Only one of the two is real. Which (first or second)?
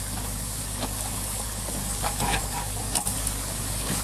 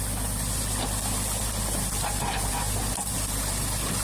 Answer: second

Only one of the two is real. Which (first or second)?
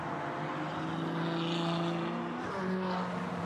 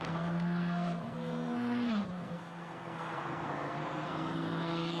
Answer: first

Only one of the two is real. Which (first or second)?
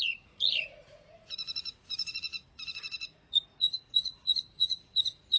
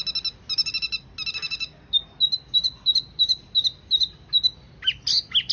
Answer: second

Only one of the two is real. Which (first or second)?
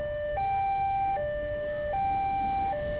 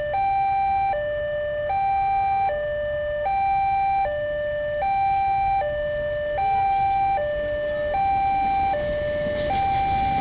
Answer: second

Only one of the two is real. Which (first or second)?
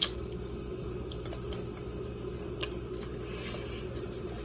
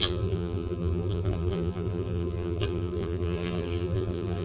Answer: first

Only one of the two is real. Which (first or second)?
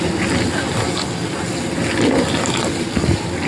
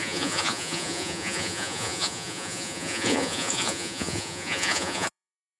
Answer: first